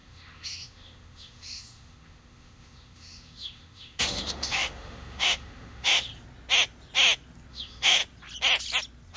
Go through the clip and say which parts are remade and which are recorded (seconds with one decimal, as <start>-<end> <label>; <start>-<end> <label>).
0.0-6.1 remade; 6.1-7.5 recorded; 7.5-8.0 remade; 8.0-9.2 recorded